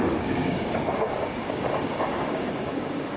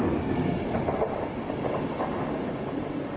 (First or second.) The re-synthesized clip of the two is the first